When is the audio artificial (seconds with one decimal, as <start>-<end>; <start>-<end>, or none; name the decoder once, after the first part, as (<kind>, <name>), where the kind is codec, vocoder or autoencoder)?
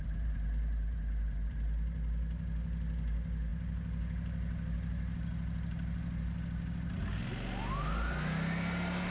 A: none